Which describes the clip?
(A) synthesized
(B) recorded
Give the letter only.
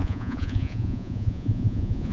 A